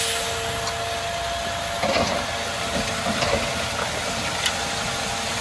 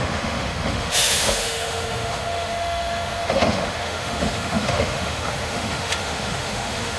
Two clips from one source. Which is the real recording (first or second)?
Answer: first